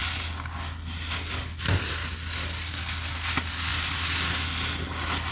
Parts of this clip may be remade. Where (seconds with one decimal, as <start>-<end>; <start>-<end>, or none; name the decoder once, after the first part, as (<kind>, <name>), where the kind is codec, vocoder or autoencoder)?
none